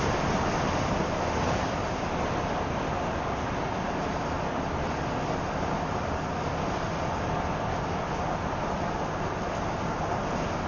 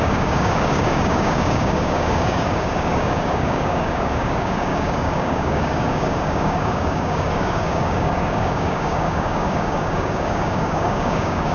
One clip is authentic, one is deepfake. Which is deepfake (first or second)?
second